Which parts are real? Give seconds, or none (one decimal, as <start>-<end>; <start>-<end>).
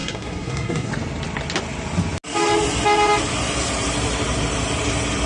0.9-5.3